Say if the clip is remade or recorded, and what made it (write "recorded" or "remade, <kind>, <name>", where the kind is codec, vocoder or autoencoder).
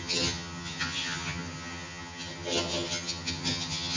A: remade, vocoder, HiFi-GAN